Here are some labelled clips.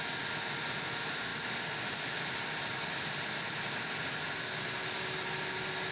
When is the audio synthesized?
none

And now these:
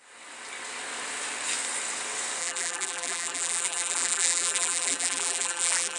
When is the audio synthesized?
2.4-6.0 (vocoder, BigVGAN v2)

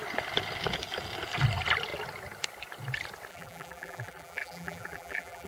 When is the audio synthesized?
3.3-5.5 (vocoder, BigVGAN v2)

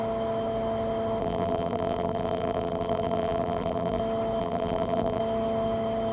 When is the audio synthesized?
1.2-4.0 (vocoder, BigVGAN v2); 4.4-5.2

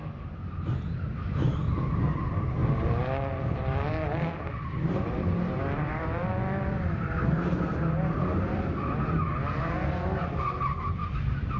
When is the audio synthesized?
0.0-1.6 (vocoder, BigVGAN v2); 2.2-2.6; 4.9-6.3; 10.2-11.0